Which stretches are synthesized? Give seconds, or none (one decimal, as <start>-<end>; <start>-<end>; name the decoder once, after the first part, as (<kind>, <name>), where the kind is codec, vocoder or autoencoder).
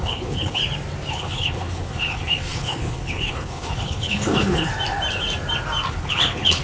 0.0-0.6 (codec, HILCodec); 1.1-4.7; 5.9-6.6